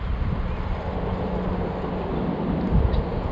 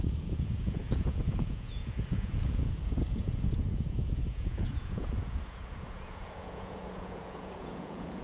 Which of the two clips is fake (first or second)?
second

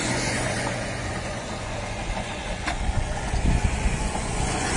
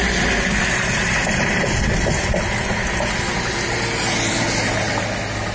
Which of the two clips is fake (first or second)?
first